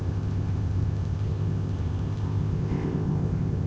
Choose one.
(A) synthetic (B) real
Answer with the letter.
A